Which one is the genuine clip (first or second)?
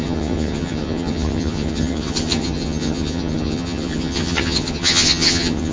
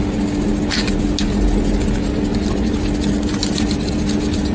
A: second